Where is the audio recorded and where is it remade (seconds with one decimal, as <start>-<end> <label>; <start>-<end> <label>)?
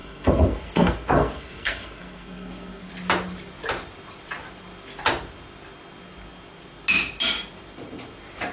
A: 0.0-2.9 remade; 2.9-8.5 recorded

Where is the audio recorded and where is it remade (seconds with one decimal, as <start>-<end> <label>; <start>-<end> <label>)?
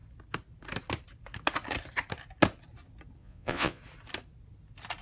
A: 0.0-3.2 recorded; 3.2-3.8 remade; 3.8-5.0 recorded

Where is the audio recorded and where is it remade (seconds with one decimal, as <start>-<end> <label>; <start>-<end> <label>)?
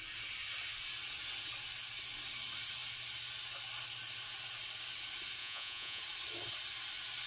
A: 0.0-5.4 recorded; 5.4-6.0 remade; 6.0-7.3 recorded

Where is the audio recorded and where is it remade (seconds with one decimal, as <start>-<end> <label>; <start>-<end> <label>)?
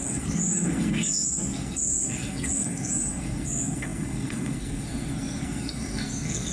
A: 0.0-6.5 remade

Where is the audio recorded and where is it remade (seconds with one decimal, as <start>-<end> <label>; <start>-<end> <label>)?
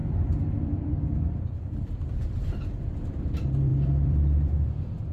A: 0.0-2.3 remade; 2.3-3.7 recorded; 3.7-5.1 remade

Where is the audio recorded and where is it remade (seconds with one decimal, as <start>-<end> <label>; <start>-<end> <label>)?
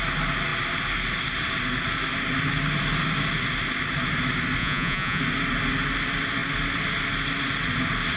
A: 0.0-4.6 recorded; 4.6-5.2 remade; 5.2-8.2 recorded